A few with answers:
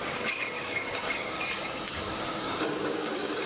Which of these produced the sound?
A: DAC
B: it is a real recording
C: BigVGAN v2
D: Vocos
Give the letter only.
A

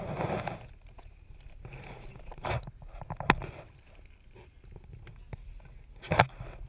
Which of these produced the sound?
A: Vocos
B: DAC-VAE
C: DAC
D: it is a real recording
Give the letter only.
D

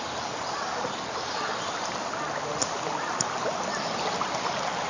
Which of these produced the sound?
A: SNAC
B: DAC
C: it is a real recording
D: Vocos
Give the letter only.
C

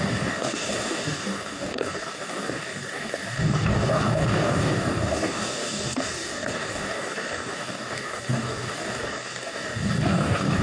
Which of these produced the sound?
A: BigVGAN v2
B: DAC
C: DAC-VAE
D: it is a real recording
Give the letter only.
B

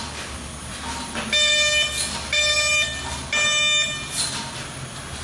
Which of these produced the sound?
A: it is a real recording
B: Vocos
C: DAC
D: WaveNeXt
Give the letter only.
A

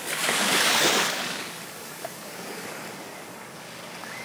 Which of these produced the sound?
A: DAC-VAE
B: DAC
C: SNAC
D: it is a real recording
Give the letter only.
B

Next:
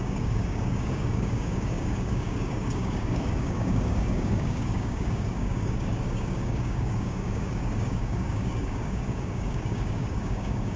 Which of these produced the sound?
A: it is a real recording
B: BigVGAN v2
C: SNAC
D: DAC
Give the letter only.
D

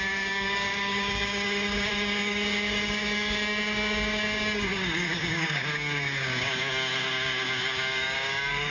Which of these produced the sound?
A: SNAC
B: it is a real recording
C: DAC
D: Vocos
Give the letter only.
C